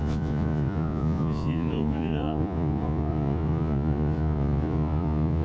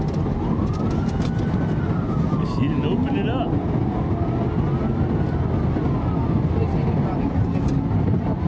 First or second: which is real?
second